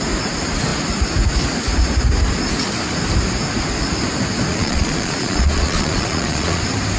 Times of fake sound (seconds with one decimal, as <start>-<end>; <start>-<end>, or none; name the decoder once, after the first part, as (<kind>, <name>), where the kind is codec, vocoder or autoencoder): 4.5-6.6 (vocoder, Vocos)